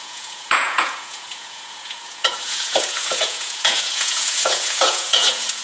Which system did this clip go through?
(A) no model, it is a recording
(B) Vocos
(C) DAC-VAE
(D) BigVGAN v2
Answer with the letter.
B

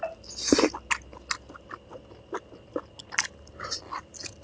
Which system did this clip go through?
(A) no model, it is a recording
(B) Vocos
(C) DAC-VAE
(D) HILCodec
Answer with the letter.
A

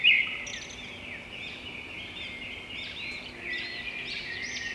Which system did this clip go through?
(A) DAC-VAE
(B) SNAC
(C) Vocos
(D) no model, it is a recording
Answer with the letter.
D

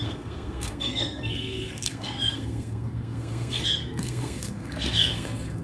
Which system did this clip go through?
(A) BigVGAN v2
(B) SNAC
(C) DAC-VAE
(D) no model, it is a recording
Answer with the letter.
B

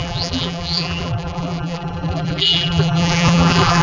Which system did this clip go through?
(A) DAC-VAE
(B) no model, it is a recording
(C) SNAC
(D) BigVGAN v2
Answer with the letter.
D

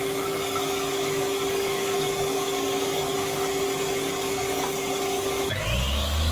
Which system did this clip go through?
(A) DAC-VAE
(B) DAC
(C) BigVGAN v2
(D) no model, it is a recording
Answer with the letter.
B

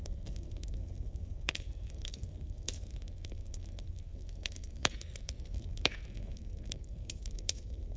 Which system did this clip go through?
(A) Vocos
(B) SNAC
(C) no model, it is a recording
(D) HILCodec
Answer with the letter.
B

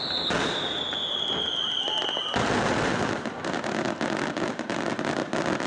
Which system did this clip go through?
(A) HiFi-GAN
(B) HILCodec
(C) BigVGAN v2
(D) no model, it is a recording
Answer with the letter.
D